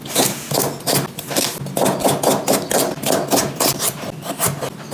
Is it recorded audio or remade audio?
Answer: recorded